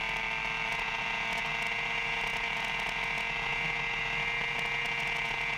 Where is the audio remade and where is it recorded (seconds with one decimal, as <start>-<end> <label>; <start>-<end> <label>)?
0.0-5.6 recorded